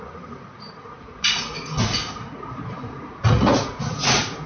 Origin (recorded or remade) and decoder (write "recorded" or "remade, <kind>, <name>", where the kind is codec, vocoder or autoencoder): remade, vocoder, Vocos